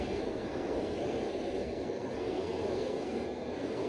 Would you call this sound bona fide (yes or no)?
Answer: no